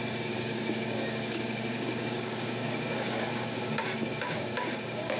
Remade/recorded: remade